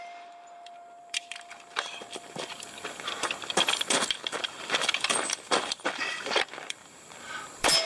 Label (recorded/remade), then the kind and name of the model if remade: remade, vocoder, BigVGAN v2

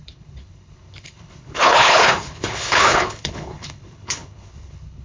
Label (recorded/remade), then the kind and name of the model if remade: remade, codec, HILCodec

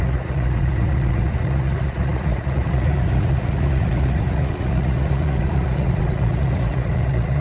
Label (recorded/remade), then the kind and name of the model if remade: remade, vocoder, Vocos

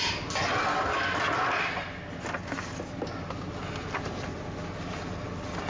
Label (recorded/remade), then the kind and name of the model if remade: recorded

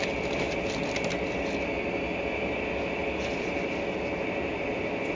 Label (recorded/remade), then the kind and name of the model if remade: recorded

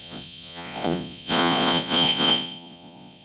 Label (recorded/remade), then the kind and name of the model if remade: remade, vocoder, Vocos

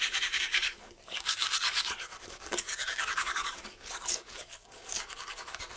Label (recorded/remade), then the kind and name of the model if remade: remade, codec, DAC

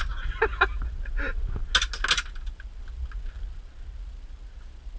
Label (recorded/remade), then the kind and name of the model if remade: recorded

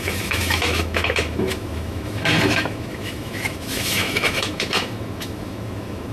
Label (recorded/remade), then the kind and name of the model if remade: remade, autoencoder, DAC-VAE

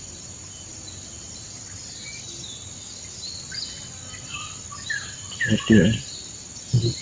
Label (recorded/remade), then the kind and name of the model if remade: recorded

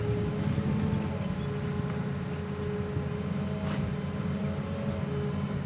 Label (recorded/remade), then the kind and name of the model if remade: recorded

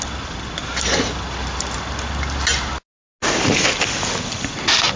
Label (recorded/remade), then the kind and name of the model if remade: recorded